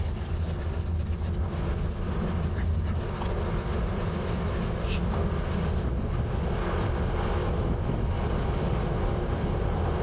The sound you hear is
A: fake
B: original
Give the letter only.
B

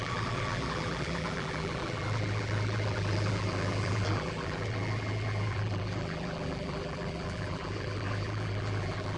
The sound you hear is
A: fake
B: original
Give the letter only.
A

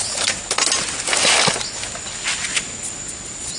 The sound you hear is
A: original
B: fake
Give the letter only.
A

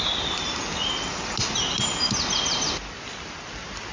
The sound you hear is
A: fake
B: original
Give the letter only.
B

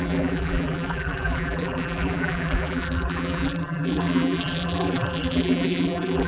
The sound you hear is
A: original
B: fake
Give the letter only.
B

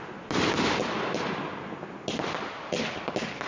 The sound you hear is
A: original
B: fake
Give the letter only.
A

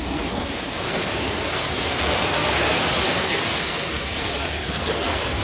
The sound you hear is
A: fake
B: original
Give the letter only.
A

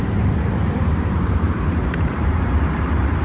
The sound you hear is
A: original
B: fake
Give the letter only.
B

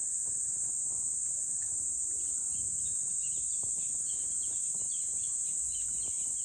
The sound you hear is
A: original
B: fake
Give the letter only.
A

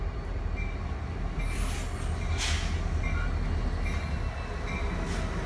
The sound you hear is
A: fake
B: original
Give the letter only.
B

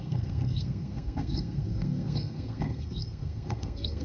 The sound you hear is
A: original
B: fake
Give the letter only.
B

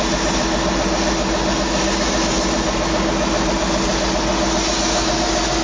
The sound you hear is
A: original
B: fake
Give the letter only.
A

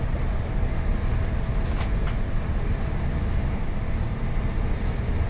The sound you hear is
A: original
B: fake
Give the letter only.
A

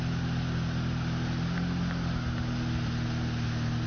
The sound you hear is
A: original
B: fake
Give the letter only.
A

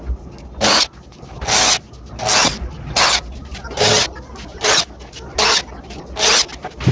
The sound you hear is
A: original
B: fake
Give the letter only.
A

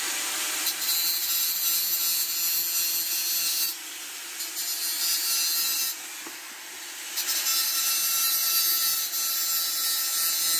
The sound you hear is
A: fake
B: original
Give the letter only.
B